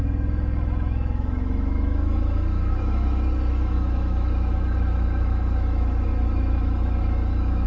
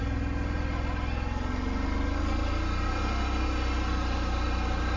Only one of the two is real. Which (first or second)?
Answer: second